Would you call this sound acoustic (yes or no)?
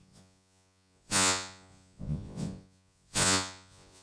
no